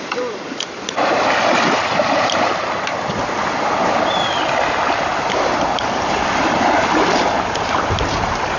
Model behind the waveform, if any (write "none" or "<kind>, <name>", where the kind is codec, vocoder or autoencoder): vocoder, BigVGAN v2